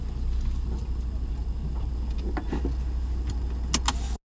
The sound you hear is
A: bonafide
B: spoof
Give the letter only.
A